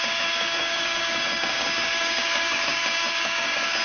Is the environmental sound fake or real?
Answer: fake